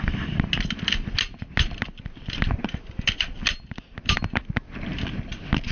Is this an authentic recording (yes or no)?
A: yes